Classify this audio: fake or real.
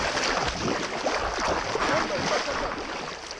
real